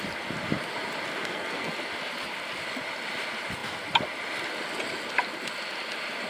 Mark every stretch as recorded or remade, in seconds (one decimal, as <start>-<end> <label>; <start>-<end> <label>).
0.0-1.2 recorded; 1.2-1.7 remade; 1.7-6.3 recorded